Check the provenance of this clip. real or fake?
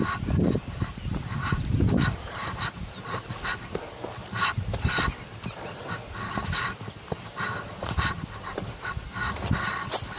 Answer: fake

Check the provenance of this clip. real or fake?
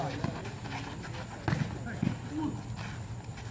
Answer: real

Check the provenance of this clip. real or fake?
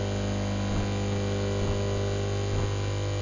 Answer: real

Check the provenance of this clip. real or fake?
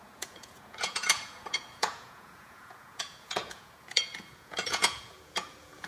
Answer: fake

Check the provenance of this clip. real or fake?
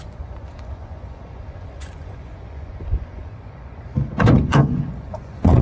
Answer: fake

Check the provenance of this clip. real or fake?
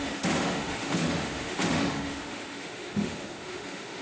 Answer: fake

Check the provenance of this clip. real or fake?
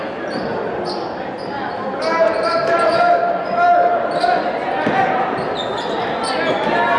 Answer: real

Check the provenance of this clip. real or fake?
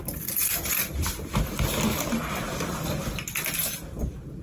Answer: real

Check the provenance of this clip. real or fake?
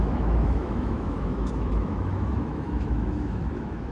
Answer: fake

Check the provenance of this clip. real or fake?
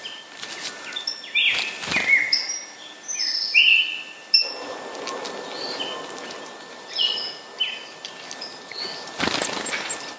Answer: real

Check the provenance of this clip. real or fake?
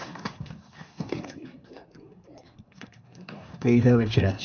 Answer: fake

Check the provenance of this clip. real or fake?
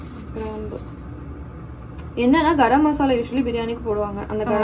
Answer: real